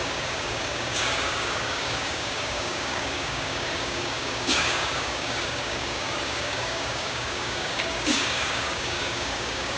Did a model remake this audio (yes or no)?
yes